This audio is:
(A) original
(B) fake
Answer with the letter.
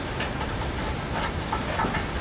A